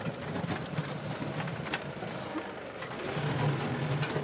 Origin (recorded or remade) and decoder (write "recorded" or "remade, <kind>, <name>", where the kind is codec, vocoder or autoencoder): recorded